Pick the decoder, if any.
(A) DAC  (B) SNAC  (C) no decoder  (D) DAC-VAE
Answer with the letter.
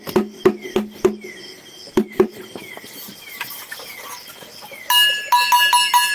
C